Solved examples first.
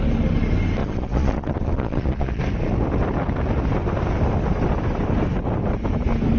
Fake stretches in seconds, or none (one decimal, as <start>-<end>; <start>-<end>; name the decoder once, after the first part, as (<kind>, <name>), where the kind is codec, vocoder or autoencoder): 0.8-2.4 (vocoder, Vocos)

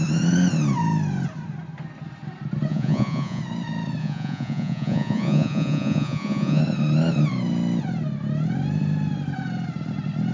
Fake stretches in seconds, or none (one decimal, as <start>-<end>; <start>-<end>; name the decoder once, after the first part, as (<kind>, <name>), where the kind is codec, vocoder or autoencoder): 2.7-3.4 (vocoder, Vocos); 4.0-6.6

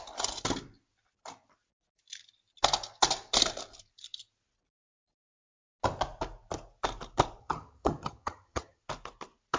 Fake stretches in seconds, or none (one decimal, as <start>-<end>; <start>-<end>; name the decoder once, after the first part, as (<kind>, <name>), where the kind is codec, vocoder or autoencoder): 7.4-8.8 (vocoder, HiFi-GAN)

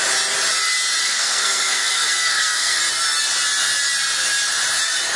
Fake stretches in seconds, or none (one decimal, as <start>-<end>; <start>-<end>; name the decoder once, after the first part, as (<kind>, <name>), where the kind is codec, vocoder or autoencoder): 1.0-2.8 (codec, SNAC)

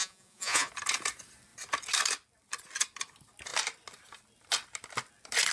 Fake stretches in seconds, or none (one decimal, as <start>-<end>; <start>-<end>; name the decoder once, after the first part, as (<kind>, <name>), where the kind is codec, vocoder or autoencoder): 0.0-0.7 (vocoder, Vocos)

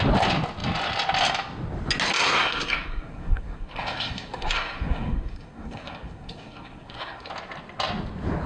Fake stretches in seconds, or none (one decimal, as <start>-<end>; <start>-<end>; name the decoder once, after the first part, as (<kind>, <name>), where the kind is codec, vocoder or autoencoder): 2.2-7.3 (codec, SNAC)

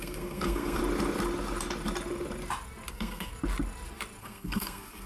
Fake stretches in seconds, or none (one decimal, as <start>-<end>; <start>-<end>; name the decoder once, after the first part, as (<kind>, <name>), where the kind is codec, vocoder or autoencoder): 0.0-0.8 (codec, SNAC); 2.9-3.3; 4.2-5.1